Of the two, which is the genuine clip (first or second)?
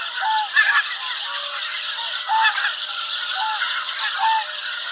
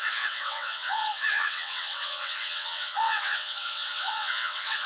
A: first